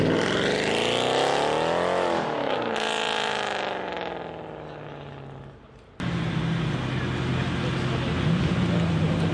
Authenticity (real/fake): real